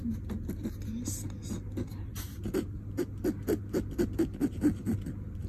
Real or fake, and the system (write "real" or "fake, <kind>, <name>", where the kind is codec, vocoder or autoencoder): real